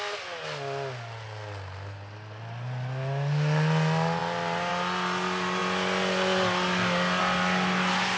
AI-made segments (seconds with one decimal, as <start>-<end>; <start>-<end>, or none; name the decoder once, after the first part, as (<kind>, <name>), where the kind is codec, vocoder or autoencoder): none